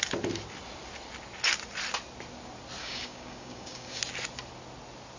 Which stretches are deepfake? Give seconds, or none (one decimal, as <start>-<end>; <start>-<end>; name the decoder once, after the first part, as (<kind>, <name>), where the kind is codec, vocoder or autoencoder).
2.8-4.0 (codec, DAC)